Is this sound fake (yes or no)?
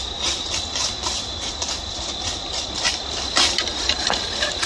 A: no